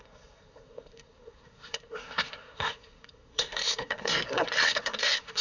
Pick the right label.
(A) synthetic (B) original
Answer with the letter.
A